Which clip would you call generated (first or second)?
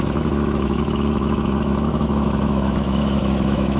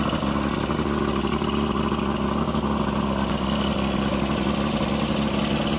first